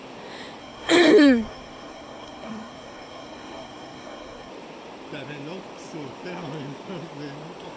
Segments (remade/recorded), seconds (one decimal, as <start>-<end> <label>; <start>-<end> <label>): 0.0-0.6 recorded; 0.6-4.5 remade; 4.5-7.8 recorded